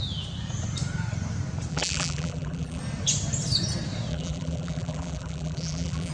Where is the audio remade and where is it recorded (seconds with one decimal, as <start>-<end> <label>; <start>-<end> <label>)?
0.0-1.7 recorded; 1.7-2.8 remade; 2.8-4.1 recorded; 4.1-6.1 remade

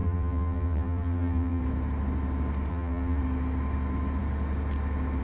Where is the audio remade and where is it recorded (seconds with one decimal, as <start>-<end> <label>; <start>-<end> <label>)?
0.0-1.6 remade; 1.6-2.7 recorded; 2.7-3.2 remade; 3.2-5.2 recorded

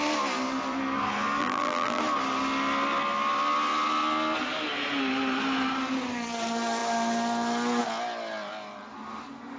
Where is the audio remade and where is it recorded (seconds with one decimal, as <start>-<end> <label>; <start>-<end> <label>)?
0.0-1.4 recorded; 1.4-2.0 remade; 2.0-9.6 recorded